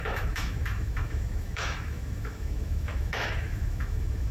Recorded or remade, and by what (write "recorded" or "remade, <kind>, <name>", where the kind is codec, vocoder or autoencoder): remade, autoencoder, DAC-VAE